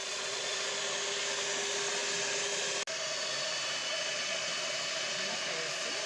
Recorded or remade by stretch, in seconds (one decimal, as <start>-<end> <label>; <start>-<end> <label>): 0.0-0.7 remade; 0.7-3.8 recorded; 3.8-4.5 remade; 4.5-6.1 recorded